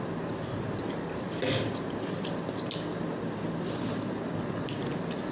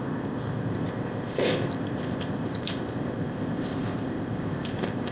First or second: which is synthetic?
second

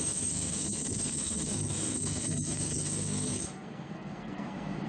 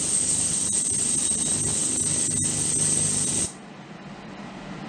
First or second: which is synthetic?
first